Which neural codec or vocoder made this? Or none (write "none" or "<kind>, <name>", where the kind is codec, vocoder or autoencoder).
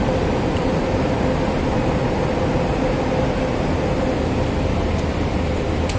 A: none